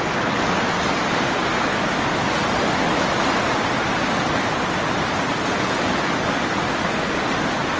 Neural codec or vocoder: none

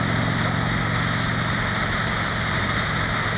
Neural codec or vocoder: none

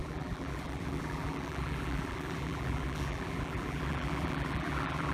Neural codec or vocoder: vocoder, BigVGAN v2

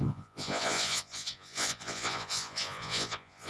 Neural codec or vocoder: vocoder, Vocos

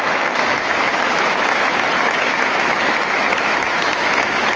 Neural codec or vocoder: autoencoder, DAC-VAE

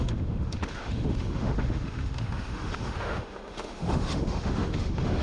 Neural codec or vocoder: autoencoder, DAC-VAE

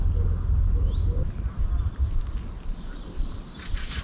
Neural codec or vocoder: none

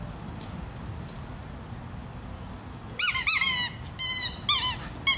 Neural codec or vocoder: none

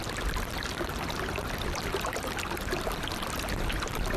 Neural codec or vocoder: none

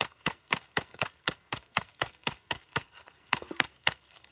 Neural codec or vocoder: codec, SNAC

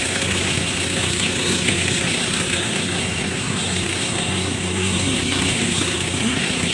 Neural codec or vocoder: codec, SNAC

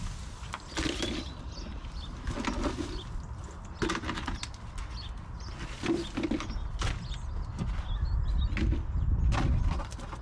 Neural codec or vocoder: none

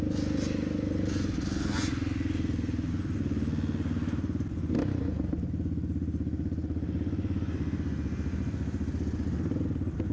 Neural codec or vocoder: none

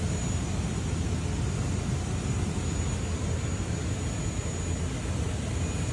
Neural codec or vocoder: none